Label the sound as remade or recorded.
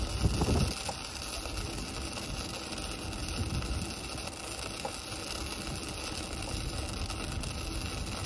recorded